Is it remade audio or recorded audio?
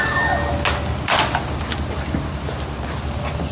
recorded